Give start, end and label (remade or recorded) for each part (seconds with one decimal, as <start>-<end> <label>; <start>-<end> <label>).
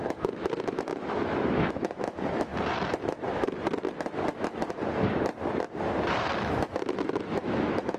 0.0-2.5 remade; 2.5-6.4 recorded; 6.4-8.0 remade